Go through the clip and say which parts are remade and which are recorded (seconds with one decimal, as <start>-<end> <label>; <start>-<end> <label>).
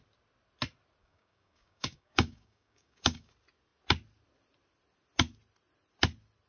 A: 0.0-1.0 recorded; 1.0-3.3 remade; 3.3-6.5 recorded